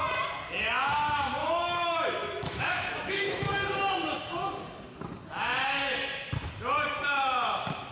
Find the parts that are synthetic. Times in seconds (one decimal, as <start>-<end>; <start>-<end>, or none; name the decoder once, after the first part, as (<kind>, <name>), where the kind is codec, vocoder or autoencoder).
1.4-3.5 (autoencoder, DAC-VAE)